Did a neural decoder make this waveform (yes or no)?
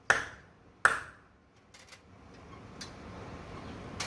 no